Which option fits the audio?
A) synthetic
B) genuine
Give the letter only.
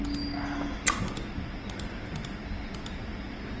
B